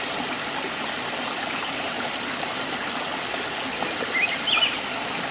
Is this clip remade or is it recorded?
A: recorded